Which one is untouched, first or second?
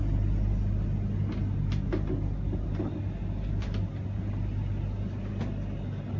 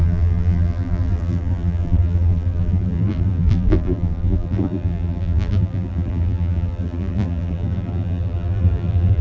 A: first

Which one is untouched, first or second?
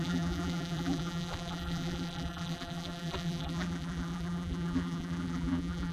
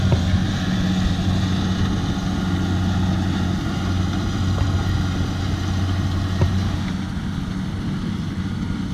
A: second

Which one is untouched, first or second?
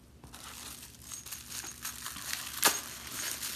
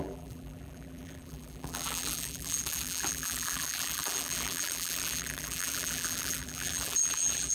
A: first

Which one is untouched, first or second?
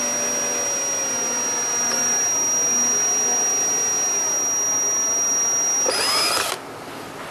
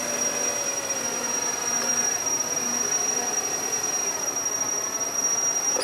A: first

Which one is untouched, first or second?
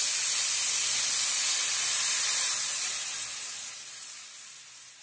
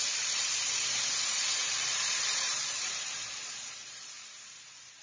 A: first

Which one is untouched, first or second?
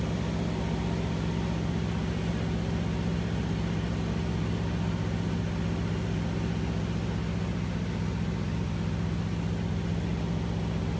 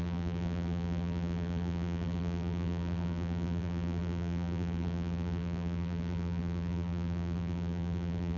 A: first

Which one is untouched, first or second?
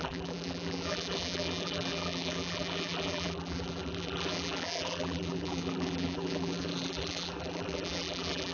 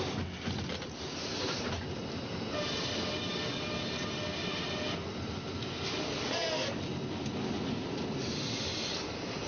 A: second